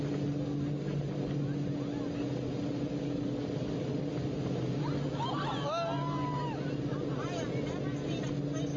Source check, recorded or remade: recorded